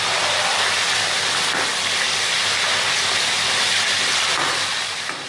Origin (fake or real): real